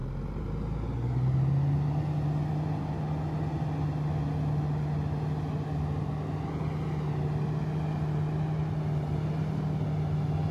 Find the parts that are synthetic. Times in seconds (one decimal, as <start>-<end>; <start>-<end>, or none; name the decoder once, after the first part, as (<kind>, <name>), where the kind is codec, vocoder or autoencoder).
none